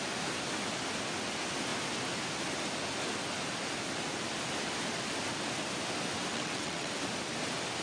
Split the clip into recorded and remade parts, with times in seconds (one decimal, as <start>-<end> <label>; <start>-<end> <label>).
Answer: 0.0-6.3 recorded; 6.3-6.9 remade; 6.9-7.8 recorded